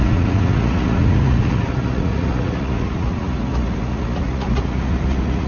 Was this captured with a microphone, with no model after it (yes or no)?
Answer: no